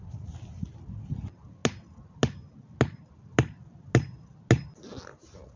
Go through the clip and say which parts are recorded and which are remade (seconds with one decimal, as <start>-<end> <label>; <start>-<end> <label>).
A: 0.0-5.6 recorded

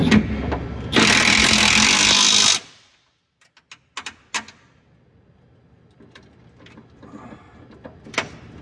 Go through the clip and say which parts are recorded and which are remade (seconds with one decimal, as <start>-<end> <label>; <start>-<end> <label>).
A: 0.0-8.6 recorded

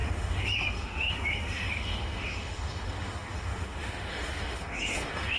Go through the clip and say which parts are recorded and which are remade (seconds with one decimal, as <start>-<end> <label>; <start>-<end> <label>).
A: 0.0-5.4 remade

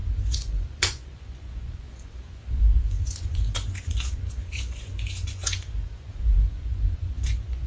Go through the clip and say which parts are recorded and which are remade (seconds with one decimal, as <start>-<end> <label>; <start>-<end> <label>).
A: 0.0-7.7 remade

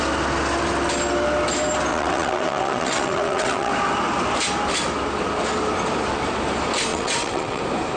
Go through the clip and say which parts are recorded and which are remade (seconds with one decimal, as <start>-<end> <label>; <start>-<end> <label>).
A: 0.0-1.9 recorded; 1.9-3.7 remade; 3.7-6.9 recorded; 6.9-7.6 remade; 7.6-8.0 recorded

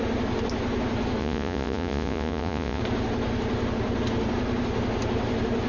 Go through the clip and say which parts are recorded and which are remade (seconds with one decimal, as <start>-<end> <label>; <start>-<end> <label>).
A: 0.0-1.2 recorded; 1.2-2.8 remade; 2.8-5.7 recorded

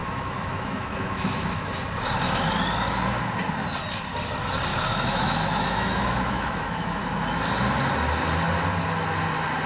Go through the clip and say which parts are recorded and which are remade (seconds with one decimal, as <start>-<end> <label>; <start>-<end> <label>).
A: 0.0-1.7 remade; 1.7-4.7 recorded; 4.7-7.0 remade; 7.0-9.7 recorded

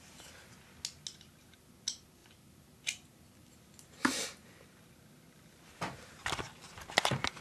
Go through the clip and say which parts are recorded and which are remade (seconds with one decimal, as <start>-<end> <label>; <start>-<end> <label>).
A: 0.0-7.4 recorded